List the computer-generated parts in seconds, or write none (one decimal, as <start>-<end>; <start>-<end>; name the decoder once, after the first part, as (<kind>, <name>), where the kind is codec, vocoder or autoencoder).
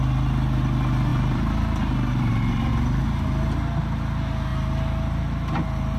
1.1-2.7 (vocoder, BigVGAN v2)